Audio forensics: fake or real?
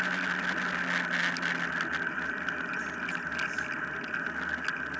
real